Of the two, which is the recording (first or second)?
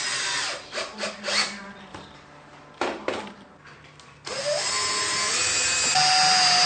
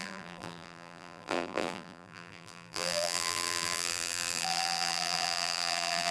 first